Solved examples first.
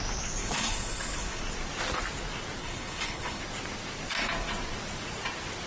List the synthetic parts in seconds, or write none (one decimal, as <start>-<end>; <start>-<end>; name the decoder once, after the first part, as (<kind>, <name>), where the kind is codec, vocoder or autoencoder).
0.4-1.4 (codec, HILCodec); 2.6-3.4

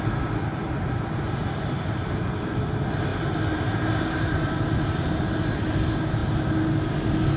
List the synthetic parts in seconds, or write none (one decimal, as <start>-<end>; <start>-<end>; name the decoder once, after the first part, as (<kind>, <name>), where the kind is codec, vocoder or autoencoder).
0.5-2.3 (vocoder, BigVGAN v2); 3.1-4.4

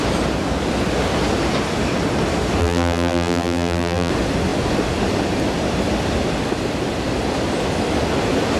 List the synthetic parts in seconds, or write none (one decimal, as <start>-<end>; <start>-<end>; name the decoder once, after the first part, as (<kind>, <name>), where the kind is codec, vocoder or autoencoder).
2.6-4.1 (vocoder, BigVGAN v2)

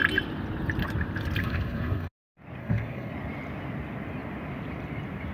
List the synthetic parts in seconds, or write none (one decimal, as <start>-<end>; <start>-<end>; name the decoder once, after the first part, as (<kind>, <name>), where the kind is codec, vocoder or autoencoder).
1.4-2.1 (codec, SNAC); 2.6-3.1